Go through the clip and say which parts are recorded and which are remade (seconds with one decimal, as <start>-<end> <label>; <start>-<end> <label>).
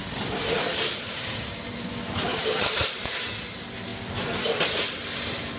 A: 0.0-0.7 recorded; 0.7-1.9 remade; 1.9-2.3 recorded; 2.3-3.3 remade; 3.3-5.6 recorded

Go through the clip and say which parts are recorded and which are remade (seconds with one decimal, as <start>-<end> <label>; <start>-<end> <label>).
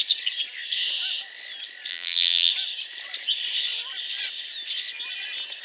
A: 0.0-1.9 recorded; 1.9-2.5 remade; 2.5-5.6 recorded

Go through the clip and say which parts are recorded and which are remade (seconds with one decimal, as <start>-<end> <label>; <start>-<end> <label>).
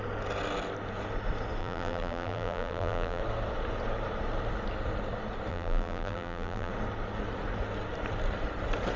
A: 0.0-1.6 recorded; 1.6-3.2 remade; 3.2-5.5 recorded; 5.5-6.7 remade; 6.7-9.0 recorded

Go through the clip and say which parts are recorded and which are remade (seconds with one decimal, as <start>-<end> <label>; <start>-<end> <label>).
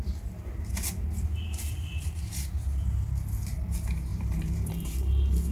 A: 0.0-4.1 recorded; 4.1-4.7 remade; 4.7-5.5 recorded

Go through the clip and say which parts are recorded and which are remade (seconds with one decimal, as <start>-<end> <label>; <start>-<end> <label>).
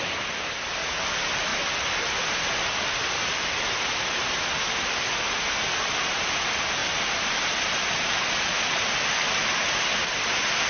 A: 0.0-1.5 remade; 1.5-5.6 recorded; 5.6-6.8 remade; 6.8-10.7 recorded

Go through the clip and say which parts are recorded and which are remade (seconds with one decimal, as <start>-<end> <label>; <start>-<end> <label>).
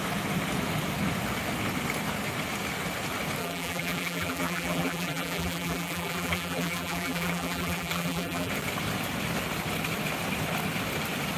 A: 0.0-3.4 recorded; 3.4-8.5 remade; 8.5-11.4 recorded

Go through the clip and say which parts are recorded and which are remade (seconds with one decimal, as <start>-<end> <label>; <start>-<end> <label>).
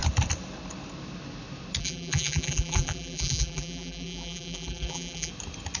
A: 0.0-1.8 recorded; 1.8-5.3 remade; 5.3-5.8 recorded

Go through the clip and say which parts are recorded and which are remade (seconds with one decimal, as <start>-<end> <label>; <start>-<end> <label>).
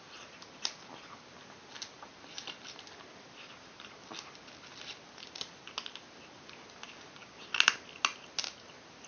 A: 0.0-9.1 recorded